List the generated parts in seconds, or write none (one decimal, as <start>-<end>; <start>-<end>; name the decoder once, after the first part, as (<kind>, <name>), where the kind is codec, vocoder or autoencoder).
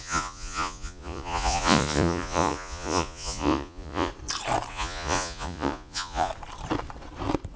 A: 0.0-4.1 (vocoder, Vocos); 4.7-6.3